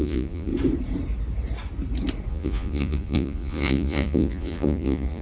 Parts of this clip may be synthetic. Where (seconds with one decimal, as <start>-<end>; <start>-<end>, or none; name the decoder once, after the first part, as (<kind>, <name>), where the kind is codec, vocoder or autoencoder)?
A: 0.0-0.5 (vocoder, Vocos); 2.3-5.2